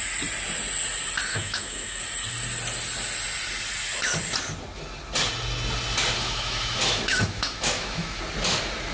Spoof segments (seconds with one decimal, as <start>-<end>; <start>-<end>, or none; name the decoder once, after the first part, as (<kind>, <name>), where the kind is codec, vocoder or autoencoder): 1.3-2.0 (autoencoder, DAC-VAE); 6.2-8.2